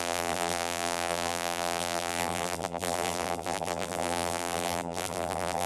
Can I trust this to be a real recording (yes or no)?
no